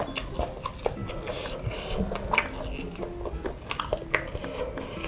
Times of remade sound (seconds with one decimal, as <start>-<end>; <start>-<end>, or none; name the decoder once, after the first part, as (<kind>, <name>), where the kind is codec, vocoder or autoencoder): none